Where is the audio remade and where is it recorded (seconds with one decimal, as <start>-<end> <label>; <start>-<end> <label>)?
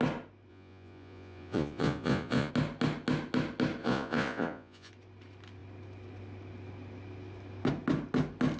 0.0-0.5 recorded; 0.5-2.5 remade; 2.5-3.8 recorded; 3.8-4.9 remade; 4.9-8.6 recorded